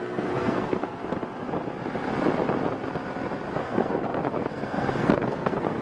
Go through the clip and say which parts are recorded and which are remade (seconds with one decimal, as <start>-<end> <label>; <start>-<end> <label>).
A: 0.0-1.0 remade; 1.0-3.5 recorded; 3.5-5.8 remade